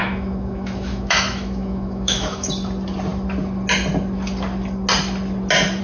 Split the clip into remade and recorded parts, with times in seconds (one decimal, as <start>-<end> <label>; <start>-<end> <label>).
0.0-2.5 remade; 2.5-5.8 recorded